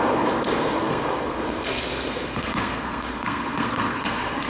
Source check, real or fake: fake